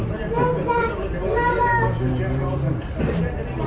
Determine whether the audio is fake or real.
real